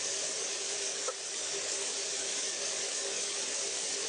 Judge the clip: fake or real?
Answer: fake